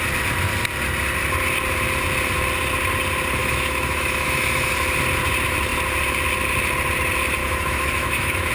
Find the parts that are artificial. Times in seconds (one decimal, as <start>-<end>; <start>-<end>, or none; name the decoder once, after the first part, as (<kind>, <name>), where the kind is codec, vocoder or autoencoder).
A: 3.4-4.7 (autoencoder, DAC-VAE); 7.4-8.5